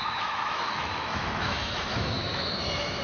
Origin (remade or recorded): remade